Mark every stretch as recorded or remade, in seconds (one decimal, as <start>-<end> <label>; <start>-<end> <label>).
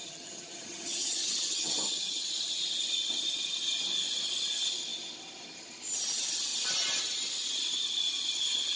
0.0-2.2 remade; 2.2-8.8 recorded